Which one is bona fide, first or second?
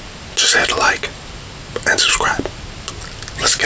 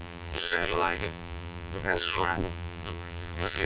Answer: first